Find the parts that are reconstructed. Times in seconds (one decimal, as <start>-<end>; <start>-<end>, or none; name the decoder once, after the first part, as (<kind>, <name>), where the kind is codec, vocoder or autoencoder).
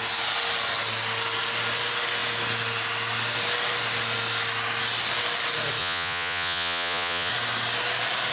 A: 5.8-7.3 (vocoder, Vocos)